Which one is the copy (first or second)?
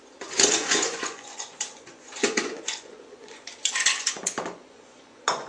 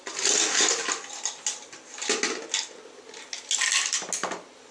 first